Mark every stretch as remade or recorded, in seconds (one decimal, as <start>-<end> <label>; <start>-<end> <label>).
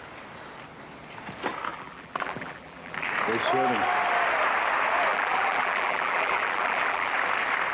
0.0-1.7 recorded; 1.7-3.1 remade; 3.1-5.1 recorded; 5.1-7.1 remade; 7.1-7.7 recorded